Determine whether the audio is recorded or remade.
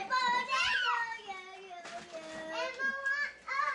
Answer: recorded